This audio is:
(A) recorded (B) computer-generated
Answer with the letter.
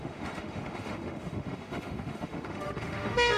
B